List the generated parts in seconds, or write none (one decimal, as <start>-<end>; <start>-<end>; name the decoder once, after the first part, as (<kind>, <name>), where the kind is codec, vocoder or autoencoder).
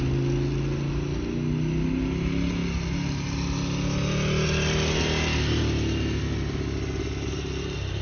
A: none